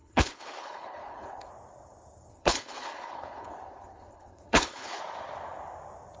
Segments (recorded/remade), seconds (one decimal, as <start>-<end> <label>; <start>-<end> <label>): 0.0-1.5 remade; 1.5-2.3 recorded; 2.3-5.0 remade; 5.0-6.2 recorded